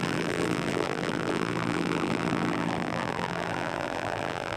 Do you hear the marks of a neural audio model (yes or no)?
yes